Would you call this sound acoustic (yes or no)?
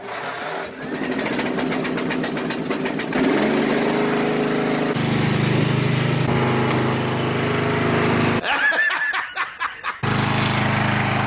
yes